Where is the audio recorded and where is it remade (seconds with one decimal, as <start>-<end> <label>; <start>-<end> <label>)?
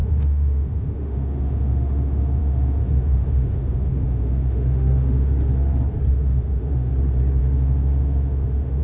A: 0.0-5.3 remade; 5.3-6.1 recorded; 6.1-6.9 remade; 6.9-7.4 recorded; 7.4-8.8 remade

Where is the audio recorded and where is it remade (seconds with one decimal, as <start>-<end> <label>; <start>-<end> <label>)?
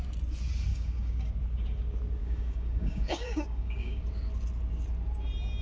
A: 0.0-0.7 recorded; 0.7-1.3 remade; 1.3-2.2 recorded; 2.2-4.0 remade; 4.0-5.6 recorded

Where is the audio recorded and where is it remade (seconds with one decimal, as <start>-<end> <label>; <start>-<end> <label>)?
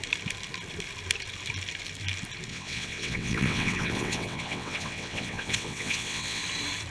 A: 0.0-2.5 recorded; 2.5-6.4 remade; 6.4-6.9 recorded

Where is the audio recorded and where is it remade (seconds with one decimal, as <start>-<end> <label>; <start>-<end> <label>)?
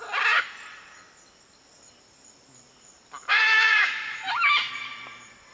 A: 0.0-3.3 recorded; 3.3-4.7 remade; 4.7-5.5 recorded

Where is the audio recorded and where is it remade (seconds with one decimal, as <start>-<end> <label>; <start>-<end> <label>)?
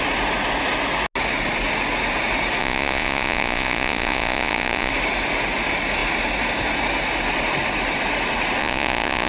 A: 0.0-2.6 recorded; 2.6-4.9 remade; 4.9-8.6 recorded; 8.6-9.3 remade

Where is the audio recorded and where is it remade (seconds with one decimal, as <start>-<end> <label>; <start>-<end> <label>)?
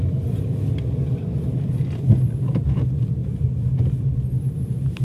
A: 0.0-5.0 recorded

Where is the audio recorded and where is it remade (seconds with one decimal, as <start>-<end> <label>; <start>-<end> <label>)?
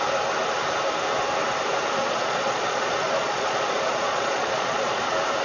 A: 0.0-2.0 recorded; 2.0-5.0 remade; 5.0-5.4 recorded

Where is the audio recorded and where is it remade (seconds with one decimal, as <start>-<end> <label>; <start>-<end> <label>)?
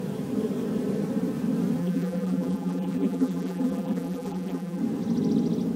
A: 0.0-1.8 recorded; 1.8-4.8 remade; 4.8-5.8 recorded